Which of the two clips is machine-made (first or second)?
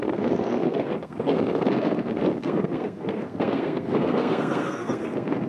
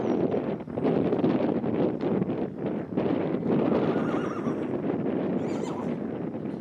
first